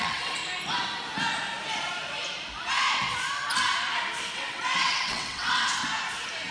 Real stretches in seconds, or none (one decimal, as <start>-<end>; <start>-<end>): 0.4-4.3; 5.8-6.5